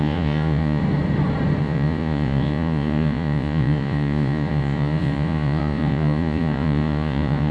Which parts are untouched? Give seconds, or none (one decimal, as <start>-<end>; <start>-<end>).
0.8-1.6